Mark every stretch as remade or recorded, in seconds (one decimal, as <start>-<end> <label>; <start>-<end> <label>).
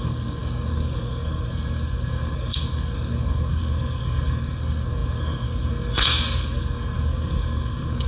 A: 0.0-8.1 remade